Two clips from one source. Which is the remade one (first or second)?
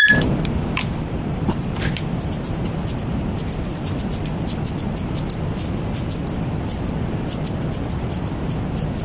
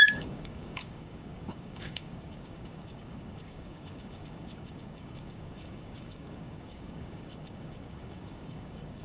second